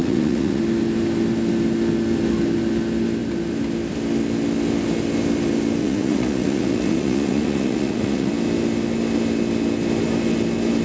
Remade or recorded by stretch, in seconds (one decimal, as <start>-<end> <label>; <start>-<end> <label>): 0.0-0.6 remade; 0.6-5.8 recorded; 5.8-8.3 remade; 8.3-10.8 recorded